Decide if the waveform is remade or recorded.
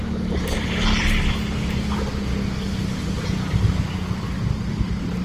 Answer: recorded